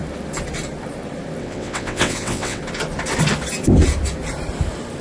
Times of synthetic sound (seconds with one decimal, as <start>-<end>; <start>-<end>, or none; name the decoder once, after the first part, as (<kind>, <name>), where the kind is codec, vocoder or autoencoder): 1.4-2.6 (vocoder, WaveNeXt)